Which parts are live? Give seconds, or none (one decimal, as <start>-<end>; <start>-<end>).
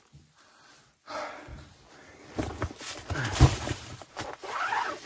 0.0-5.1